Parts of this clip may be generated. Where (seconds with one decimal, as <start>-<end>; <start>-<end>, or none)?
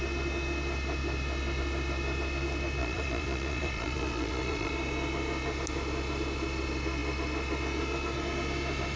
2.8-4.7